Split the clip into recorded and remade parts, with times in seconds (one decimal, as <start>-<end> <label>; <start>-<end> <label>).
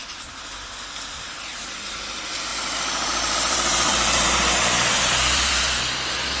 0.0-0.5 remade; 0.5-2.5 recorded; 2.5-6.4 remade